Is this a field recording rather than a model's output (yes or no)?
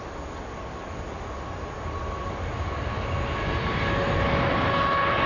yes